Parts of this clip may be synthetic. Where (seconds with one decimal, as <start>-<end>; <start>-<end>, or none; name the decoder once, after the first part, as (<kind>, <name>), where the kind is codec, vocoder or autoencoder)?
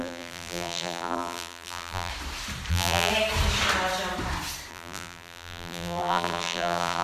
0.0-2.1 (vocoder, BigVGAN v2); 2.7-3.1; 4.7-7.0